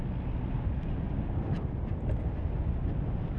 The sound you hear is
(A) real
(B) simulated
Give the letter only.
A